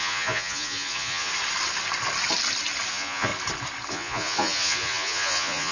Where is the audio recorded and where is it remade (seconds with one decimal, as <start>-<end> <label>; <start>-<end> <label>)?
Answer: 0.0-1.3 remade; 1.3-2.9 recorded; 2.9-3.3 remade; 3.3-3.9 recorded; 3.9-5.7 remade